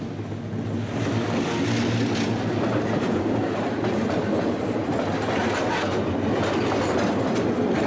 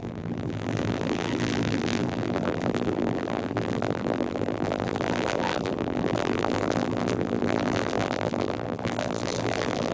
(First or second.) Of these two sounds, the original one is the first